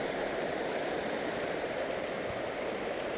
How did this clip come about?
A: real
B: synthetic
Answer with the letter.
B